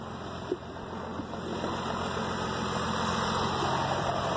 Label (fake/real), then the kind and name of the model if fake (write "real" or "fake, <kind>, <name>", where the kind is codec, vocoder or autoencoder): real